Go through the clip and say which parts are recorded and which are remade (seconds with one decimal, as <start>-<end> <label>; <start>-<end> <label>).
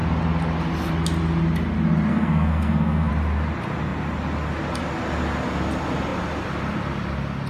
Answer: 0.0-2.1 recorded; 2.1-3.1 remade; 3.1-7.5 recorded